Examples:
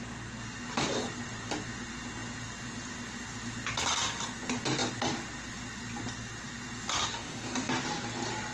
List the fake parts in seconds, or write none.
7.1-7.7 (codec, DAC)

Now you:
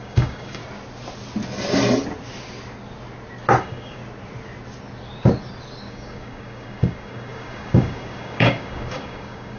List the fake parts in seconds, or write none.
0.0-0.6 (codec, DAC); 3.6-4.0; 5.9-9.6

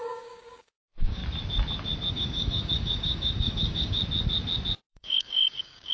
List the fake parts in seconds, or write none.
0.0-1.2 (codec, DAC); 2.1-4.0; 4.9-5.9

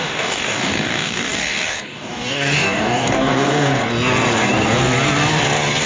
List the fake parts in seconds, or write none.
0.0-3.8 (codec, DAC)

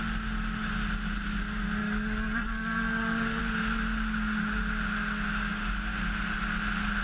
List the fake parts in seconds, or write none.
1.8-3.4 (codec, DAC)